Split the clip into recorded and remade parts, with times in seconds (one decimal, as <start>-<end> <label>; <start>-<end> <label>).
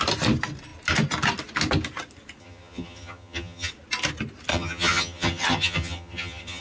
0.0-2.4 recorded; 2.4-3.7 remade; 3.7-4.5 recorded; 4.5-6.6 remade